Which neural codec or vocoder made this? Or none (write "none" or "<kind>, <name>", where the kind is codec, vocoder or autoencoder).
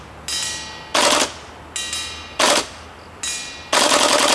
none